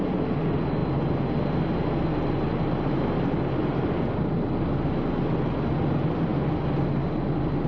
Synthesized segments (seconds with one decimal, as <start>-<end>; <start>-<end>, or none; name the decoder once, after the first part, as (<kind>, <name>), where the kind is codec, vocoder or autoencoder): none